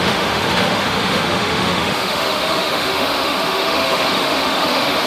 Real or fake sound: fake